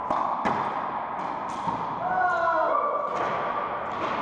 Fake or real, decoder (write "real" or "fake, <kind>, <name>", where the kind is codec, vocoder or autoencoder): real